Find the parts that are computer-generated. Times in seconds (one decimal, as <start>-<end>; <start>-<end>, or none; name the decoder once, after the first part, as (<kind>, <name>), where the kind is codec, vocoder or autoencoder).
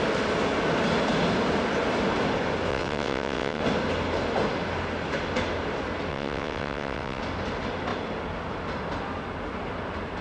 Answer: 2.7-3.6 (vocoder, WaveNeXt); 6.1-7.2